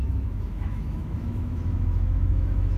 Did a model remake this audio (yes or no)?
yes